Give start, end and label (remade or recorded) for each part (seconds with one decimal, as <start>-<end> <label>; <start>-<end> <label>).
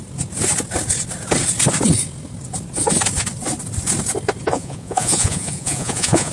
0.0-4.5 recorded; 4.5-6.3 remade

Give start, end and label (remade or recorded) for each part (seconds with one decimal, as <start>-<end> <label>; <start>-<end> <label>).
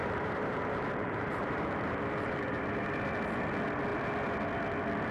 0.0-3.1 remade; 3.1-5.1 recorded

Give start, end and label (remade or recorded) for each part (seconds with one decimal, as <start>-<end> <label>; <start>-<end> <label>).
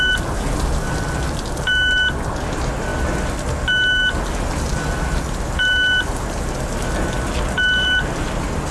0.0-8.7 recorded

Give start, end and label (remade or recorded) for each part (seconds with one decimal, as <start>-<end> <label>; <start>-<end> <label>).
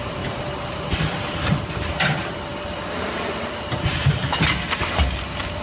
0.0-5.6 recorded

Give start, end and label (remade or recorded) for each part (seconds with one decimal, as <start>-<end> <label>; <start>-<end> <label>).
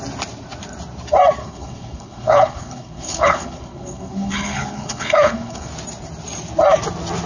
0.0-1.4 recorded; 1.4-5.7 remade; 5.7-7.3 recorded